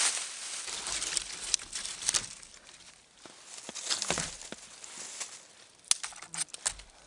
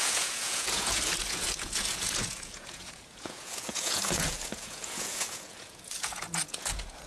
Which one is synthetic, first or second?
second